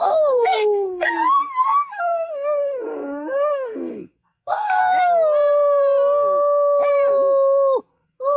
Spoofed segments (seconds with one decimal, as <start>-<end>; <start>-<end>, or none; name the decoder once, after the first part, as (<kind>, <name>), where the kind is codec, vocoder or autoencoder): 0.0-4.8 (codec, SNAC); 7.8-8.4